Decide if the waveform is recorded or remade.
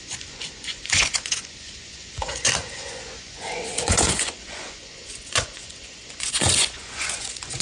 remade